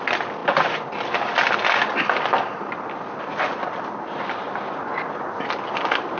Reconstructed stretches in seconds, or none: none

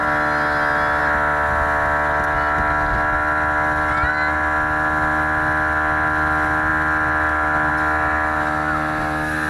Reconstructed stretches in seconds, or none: none